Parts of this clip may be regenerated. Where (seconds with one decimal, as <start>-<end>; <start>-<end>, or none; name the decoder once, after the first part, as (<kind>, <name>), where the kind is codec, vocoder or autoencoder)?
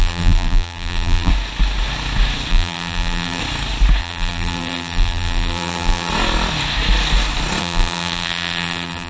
0.0-1.3 (vocoder, BigVGAN v2); 2.5-3.4; 4.0-6.1; 7.6-9.1